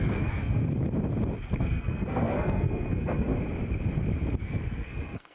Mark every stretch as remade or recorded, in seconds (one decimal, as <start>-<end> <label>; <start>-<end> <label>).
0.0-0.6 remade; 0.6-1.6 recorded; 1.6-3.3 remade; 3.3-4.4 recorded; 4.4-5.3 remade